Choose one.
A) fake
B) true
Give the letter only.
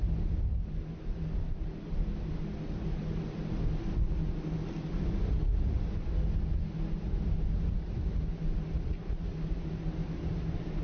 B